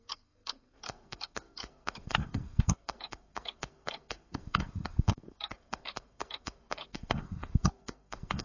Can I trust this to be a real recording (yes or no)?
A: no